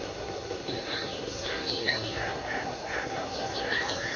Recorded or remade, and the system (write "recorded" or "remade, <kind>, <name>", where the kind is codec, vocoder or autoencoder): remade, codec, SNAC